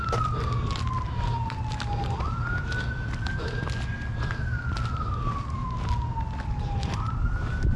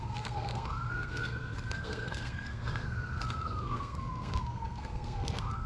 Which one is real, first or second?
first